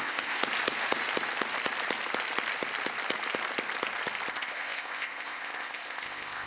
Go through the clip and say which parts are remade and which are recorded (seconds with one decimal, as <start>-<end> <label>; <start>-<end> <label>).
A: 0.0-0.4 remade; 0.4-4.3 recorded; 4.3-6.5 remade